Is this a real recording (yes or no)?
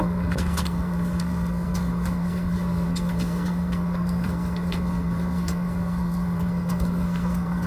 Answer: no